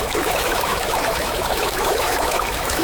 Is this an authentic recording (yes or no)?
no